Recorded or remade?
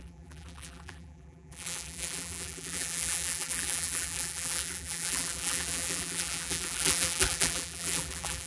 remade